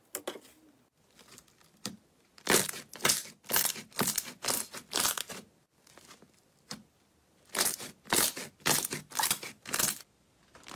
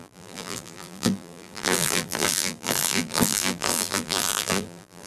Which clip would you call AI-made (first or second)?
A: second